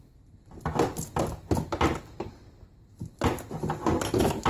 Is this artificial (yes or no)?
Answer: no